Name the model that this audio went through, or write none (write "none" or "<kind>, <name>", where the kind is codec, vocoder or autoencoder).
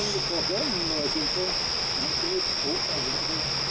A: none